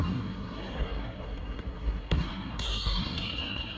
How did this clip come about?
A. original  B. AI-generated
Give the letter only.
B